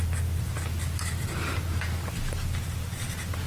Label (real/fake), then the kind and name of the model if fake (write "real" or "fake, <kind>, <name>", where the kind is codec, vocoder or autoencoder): real